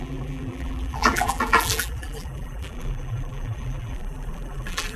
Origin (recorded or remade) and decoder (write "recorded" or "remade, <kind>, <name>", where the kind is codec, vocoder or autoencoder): remade, vocoder, BigVGAN v2